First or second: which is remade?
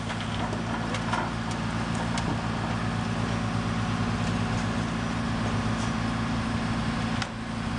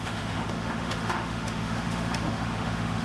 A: second